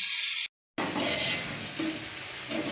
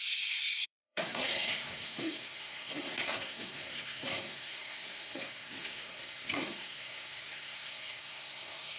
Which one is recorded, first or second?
first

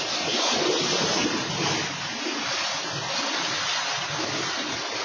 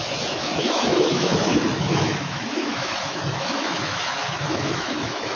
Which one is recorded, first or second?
first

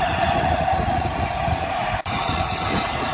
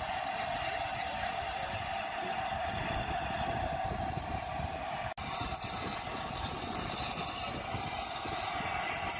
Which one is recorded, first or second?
second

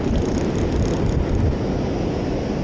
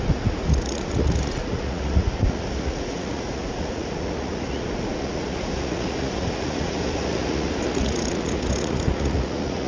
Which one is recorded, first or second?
first